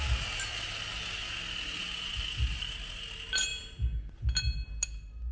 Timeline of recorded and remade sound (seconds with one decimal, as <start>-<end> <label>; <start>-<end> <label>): 0.0-5.3 recorded